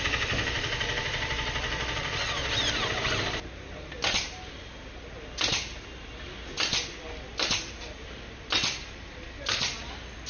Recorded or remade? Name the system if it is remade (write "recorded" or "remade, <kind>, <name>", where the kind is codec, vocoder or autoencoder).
recorded